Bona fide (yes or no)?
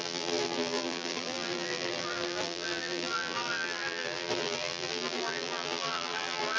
no